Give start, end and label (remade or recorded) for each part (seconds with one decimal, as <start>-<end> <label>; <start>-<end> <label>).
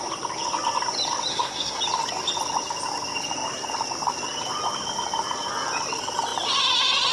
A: 0.0-1.3 recorded; 1.3-1.8 remade; 1.8-7.1 recorded